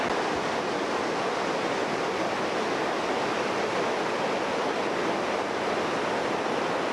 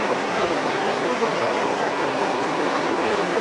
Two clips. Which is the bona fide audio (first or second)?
first